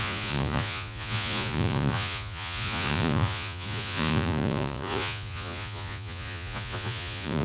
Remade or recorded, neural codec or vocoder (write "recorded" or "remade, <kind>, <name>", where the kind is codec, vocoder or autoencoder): remade, vocoder, Vocos